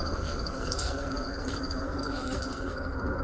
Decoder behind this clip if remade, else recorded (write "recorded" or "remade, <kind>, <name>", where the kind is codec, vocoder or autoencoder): remade, codec, SNAC